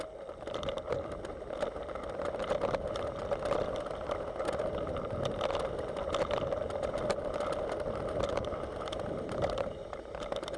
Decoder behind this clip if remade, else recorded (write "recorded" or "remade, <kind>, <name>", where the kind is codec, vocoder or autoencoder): recorded